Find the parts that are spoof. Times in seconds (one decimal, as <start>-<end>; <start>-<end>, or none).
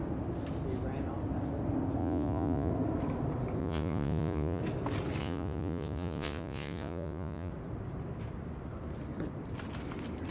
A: 2.0-2.7; 3.6-4.6; 5.2-7.5